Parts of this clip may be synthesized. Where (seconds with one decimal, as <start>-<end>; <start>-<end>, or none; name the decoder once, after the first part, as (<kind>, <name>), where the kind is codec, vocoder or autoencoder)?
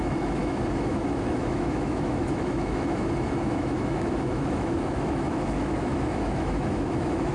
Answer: 0.0-7.3 (autoencoder, DAC-VAE)